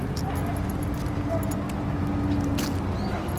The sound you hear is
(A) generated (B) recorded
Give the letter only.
B